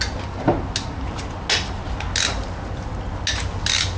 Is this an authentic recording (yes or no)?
yes